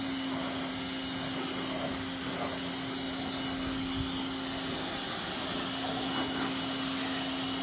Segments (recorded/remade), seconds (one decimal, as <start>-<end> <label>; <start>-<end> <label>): 0.0-7.6 recorded